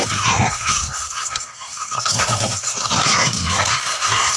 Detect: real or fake fake